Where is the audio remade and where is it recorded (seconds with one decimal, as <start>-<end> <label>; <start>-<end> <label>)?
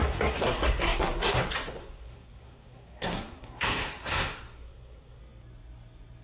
0.0-1.4 remade; 1.4-1.8 recorded; 1.8-5.2 remade; 5.2-6.2 recorded